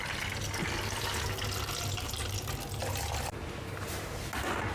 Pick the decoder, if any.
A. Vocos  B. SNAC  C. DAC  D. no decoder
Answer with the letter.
D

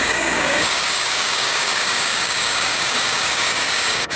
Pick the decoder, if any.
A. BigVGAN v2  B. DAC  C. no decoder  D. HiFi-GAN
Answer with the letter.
B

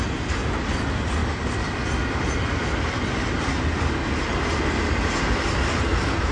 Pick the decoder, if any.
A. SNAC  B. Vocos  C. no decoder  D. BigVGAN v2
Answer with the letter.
C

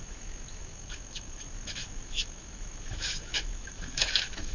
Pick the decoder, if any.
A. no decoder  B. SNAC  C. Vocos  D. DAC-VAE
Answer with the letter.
D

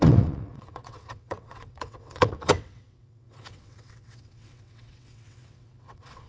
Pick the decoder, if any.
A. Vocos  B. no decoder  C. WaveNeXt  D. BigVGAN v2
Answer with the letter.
C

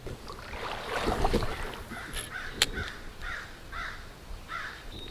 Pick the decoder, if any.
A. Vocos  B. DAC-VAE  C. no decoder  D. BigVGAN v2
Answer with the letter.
C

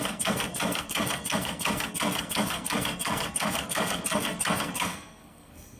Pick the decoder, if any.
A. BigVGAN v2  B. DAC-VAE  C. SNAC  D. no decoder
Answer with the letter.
C